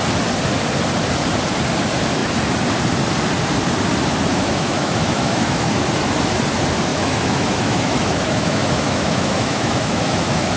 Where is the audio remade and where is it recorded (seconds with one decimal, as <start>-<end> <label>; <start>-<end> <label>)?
0.0-4.3 recorded; 4.3-5.7 remade; 5.7-6.9 recorded; 6.9-10.6 remade